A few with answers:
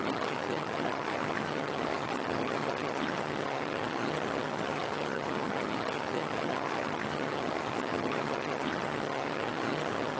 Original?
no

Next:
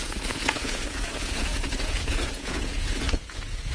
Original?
no